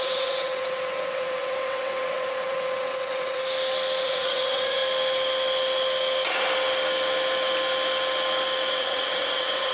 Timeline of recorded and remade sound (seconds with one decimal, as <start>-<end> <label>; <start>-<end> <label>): 0.0-3.4 remade; 3.4-4.0 recorded; 4.0-4.8 remade; 4.8-8.7 recorded; 8.7-9.7 remade